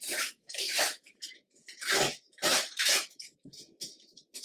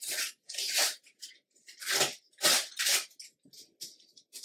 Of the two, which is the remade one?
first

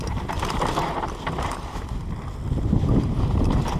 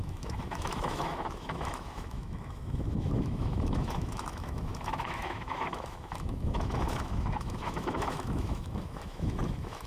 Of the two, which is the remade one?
second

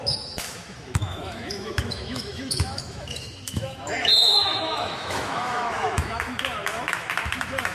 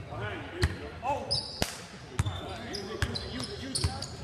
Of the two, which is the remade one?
first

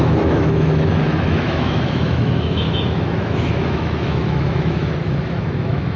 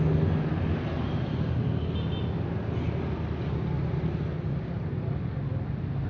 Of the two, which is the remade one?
first